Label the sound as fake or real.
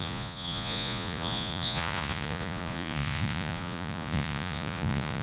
fake